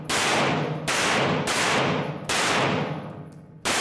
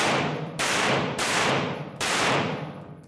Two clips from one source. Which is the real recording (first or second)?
first